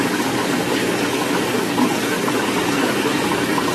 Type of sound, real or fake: fake